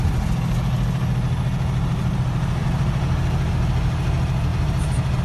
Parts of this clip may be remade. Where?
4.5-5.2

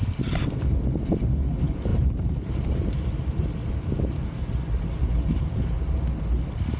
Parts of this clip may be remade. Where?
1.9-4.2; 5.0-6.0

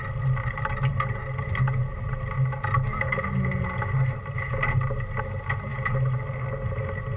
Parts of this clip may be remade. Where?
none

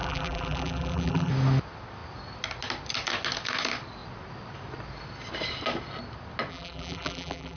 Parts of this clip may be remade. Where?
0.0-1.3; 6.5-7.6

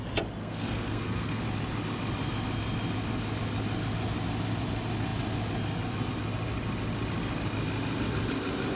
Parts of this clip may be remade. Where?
0.4-1.4

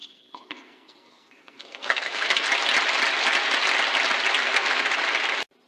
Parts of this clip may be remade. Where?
0.0-2.5; 4.4-4.9